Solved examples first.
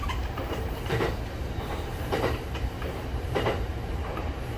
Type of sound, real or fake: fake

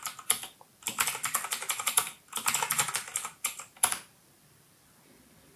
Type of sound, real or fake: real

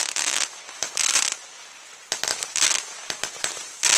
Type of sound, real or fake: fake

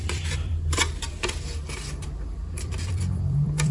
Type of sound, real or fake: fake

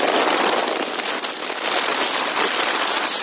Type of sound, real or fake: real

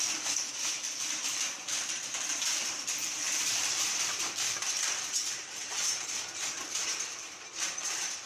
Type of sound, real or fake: fake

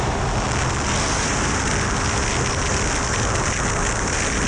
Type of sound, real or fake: real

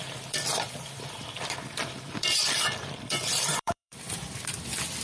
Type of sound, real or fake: fake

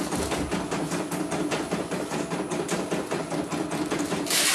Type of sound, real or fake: real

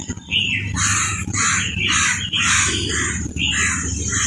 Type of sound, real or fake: real